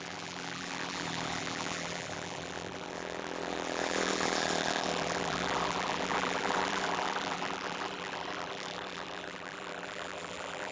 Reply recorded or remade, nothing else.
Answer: remade